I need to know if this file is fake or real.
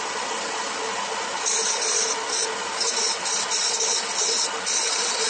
real